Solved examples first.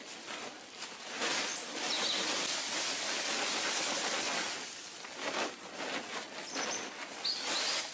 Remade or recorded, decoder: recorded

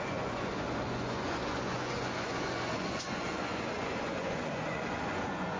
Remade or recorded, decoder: remade, vocoder, Vocos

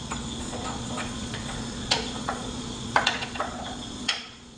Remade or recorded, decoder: remade, vocoder, Vocos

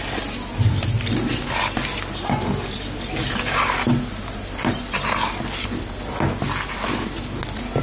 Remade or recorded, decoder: recorded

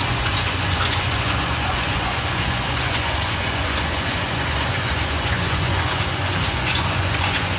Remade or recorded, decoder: remade, vocoder, Vocos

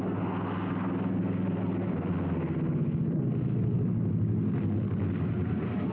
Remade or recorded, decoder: recorded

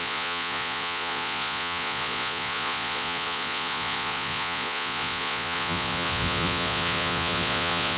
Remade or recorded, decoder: remade, vocoder, Vocos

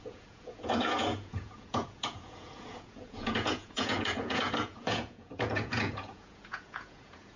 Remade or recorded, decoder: remade, vocoder, Vocos